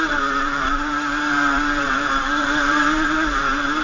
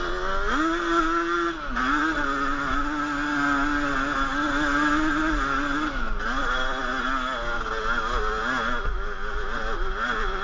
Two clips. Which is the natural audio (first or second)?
second